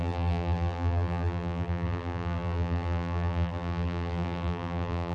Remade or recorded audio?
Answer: remade